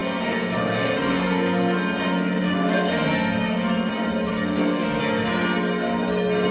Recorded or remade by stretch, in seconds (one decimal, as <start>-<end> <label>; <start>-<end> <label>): 0.0-3.9 remade; 3.9-4.3 recorded; 4.3-5.0 remade; 5.0-6.5 recorded